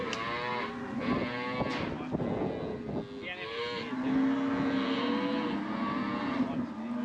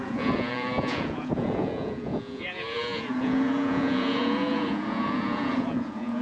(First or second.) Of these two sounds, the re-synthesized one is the second